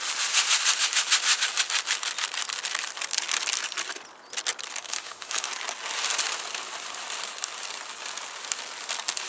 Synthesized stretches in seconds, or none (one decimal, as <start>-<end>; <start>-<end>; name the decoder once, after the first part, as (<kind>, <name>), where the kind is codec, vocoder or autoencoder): 4.8-5.5 (autoencoder, DAC-VAE)